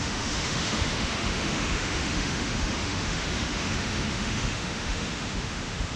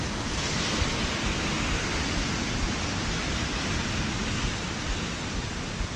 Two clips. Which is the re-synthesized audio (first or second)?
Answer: first